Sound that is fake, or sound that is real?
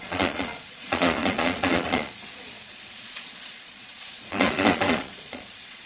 fake